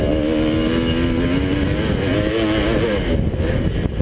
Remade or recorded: recorded